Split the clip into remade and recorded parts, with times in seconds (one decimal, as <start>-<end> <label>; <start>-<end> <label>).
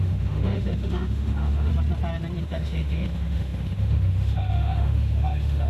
0.0-1.7 remade; 1.7-2.4 recorded; 2.4-5.7 remade